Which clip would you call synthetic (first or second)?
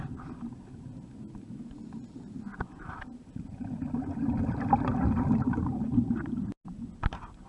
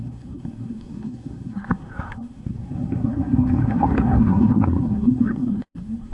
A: second